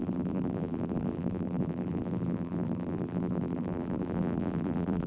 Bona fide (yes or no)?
no